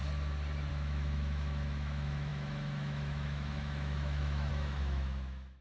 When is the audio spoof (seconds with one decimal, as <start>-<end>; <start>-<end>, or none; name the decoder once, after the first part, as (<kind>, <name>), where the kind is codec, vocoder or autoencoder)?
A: 0.7-5.6 (autoencoder, DAC-VAE)